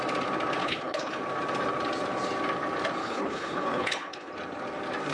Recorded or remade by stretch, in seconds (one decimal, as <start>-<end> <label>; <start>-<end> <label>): 0.0-0.6 recorded; 0.6-1.2 remade; 1.2-3.0 recorded; 3.0-4.3 remade; 4.3-5.1 recorded